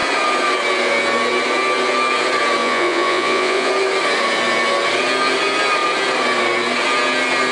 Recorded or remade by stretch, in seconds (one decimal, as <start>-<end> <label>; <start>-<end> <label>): 0.0-2.6 recorded; 2.6-3.7 remade; 3.7-7.5 recorded